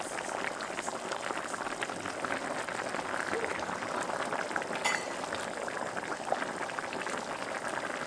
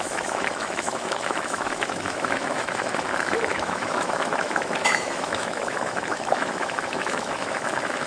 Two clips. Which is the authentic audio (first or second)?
first